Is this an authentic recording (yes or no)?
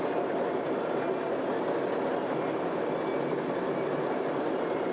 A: yes